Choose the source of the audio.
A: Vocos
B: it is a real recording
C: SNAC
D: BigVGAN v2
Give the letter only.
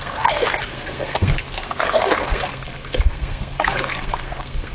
C